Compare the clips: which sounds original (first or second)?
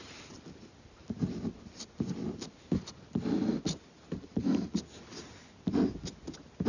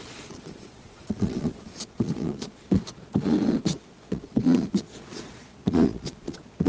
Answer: first